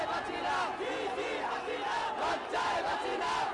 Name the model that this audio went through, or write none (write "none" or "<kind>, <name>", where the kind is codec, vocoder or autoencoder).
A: none